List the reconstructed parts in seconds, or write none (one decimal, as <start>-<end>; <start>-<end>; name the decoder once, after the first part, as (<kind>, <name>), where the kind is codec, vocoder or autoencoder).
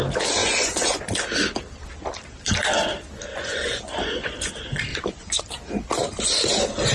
0.4-1.0 (vocoder, Vocos); 3.3-4.5; 4.9-5.4